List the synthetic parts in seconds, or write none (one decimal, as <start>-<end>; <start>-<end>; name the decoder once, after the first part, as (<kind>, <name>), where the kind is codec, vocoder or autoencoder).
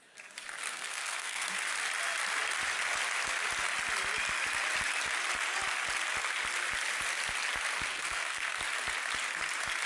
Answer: 0.7-1.5 (codec, SNAC); 7.9-8.6